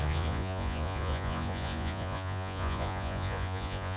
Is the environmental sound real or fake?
fake